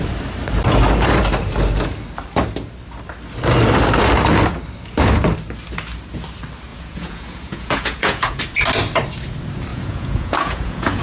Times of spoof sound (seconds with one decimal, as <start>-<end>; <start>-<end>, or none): 6.7-8.4; 9.7-11.0